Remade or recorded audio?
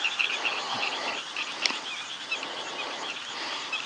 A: remade